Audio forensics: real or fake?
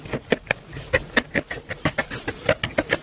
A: real